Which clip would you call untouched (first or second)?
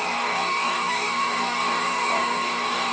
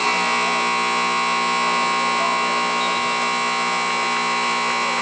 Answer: second